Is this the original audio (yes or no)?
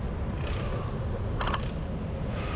yes